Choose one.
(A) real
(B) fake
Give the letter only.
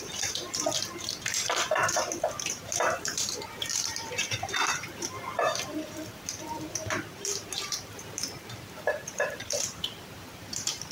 B